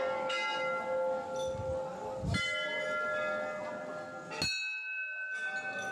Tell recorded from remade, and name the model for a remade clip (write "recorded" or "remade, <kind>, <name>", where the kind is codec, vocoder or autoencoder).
recorded